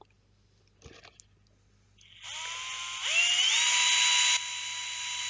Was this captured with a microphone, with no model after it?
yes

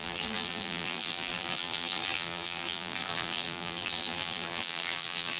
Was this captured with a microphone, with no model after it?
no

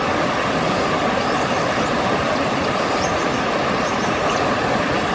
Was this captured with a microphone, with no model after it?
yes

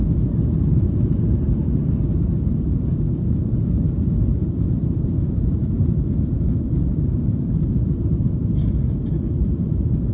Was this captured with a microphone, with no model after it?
no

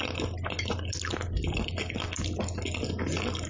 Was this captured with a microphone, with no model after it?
yes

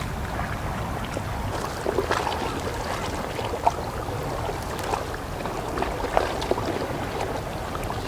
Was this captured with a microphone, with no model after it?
yes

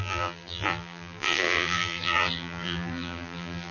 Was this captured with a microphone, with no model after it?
no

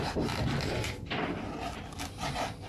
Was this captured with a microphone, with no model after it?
yes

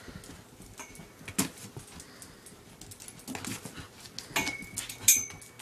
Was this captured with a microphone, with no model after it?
yes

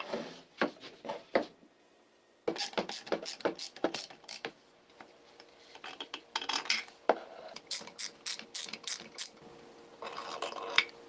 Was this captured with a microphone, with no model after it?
yes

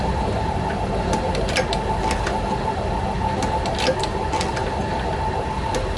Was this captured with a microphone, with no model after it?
yes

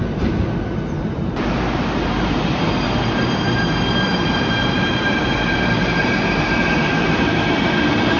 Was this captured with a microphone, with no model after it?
no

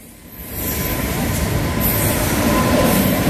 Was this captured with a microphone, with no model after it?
yes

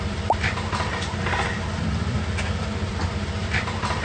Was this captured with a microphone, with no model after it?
no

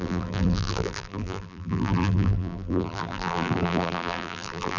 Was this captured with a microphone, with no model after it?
no